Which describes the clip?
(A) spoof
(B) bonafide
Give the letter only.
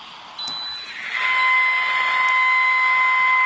B